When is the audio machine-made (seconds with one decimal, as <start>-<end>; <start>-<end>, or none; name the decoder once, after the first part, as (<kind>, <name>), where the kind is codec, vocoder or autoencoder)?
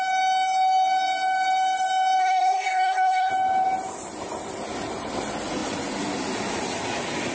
2.2-3.3 (codec, SNAC)